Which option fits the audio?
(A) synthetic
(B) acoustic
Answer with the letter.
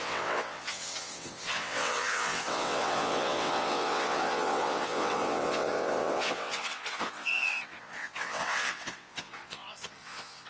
A